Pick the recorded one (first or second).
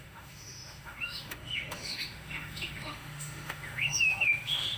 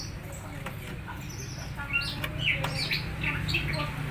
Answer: second